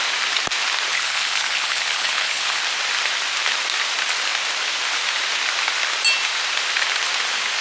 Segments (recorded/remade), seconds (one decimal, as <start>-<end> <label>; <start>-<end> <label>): 0.0-0.9 recorded; 0.9-2.6 remade; 2.6-7.6 recorded

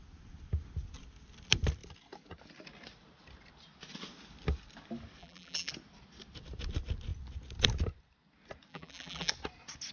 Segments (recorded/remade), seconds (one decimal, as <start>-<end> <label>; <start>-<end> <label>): 0.0-5.2 recorded; 5.2-5.7 remade; 5.7-8.7 recorded; 8.7-9.3 remade; 9.3-9.9 recorded

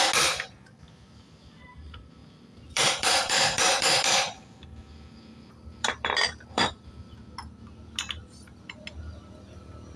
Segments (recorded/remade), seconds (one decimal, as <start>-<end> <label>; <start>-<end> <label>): 0.0-2.2 recorded; 2.2-6.7 remade; 6.7-10.0 recorded